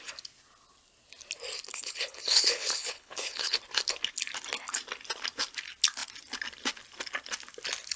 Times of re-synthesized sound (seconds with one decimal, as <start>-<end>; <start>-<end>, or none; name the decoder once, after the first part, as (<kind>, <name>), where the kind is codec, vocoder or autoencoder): 1.7-3.6 (codec, HILCodec)